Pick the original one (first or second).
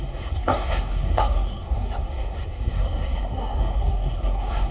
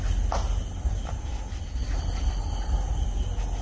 second